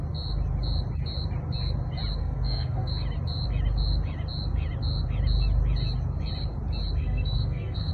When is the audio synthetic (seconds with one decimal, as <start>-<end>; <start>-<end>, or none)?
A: 2.2-2.9; 7.0-7.9